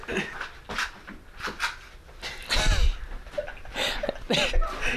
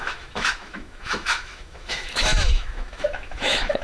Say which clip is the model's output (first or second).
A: second